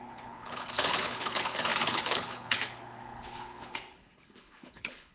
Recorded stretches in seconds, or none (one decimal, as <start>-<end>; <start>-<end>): none